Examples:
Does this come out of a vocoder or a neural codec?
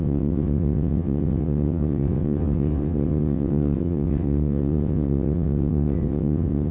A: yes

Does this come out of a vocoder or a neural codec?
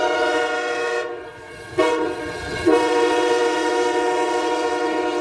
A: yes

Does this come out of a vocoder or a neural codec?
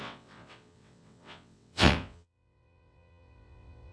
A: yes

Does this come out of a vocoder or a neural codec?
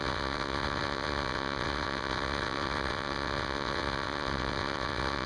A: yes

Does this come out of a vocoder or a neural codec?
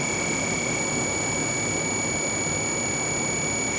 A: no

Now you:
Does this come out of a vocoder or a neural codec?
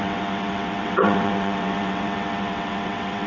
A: yes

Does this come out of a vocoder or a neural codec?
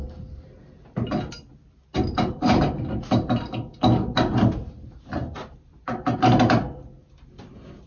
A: no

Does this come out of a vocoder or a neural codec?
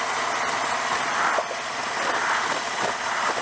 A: no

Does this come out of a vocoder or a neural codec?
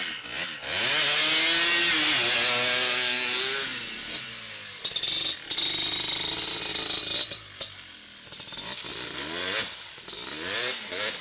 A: no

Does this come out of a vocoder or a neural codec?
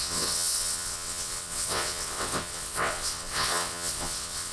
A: yes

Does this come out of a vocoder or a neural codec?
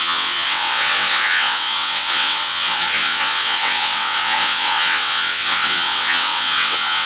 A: yes